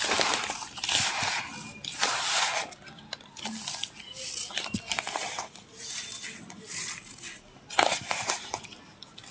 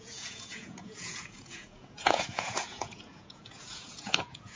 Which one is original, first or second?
first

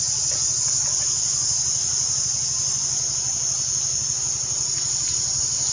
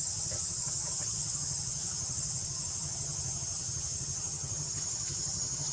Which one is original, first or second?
first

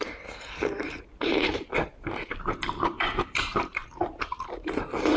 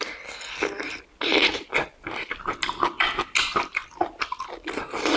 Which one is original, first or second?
second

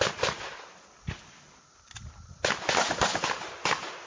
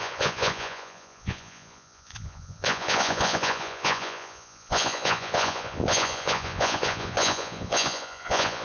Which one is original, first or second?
first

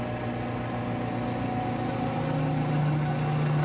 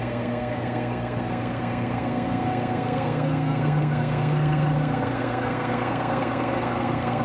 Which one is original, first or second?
first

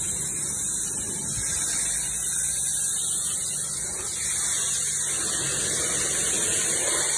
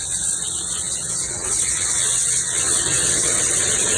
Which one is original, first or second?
first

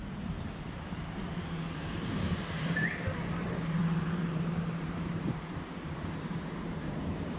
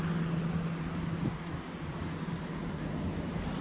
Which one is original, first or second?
second